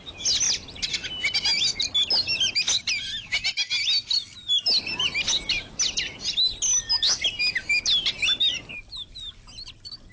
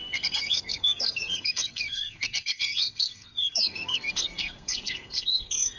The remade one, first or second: second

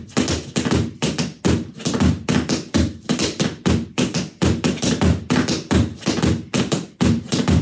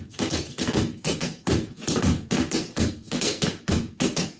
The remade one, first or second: second